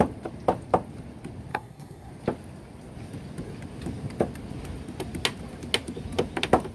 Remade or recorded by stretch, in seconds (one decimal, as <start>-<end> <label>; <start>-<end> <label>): 0.0-1.5 recorded; 1.5-2.1 remade; 2.1-6.7 recorded

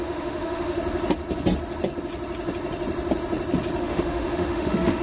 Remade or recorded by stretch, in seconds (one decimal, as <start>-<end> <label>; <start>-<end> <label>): 0.0-0.8 remade; 0.8-3.8 recorded; 3.8-5.0 remade

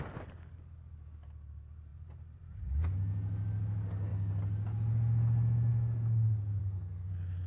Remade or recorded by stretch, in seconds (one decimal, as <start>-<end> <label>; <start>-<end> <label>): 0.0-6.6 recorded; 6.6-7.1 remade; 7.1-7.5 recorded

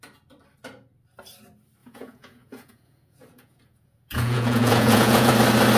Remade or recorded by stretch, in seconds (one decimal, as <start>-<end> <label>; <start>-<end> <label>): 0.0-1.8 recorded; 1.8-5.3 remade; 5.3-5.8 recorded

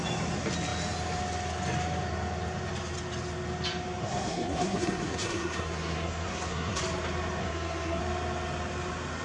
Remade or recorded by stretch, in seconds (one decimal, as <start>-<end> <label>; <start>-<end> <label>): 0.0-4.0 recorded; 4.0-6.8 remade; 6.8-7.4 recorded; 7.4-8.0 remade; 8.0-9.2 recorded

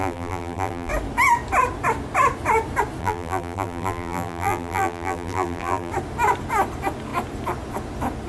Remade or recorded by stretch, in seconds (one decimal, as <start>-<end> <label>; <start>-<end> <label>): 0.0-0.9 remade; 0.9-3.0 recorded; 3.0-5.9 remade; 5.9-8.3 recorded

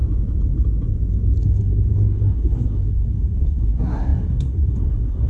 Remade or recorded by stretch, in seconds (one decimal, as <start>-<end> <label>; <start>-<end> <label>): 0.0-1.4 recorded; 1.4-5.3 remade

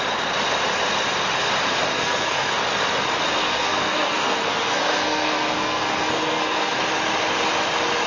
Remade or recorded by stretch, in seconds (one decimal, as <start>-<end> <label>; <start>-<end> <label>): 0.0-1.9 recorded; 1.9-2.6 remade; 2.6-3.4 recorded; 3.4-6.8 remade; 6.8-8.1 recorded